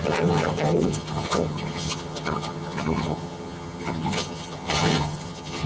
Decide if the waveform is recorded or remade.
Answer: remade